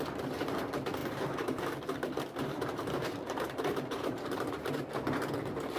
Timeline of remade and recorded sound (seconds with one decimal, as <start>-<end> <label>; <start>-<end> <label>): 0.0-1.0 recorded; 1.0-4.5 remade; 4.5-5.8 recorded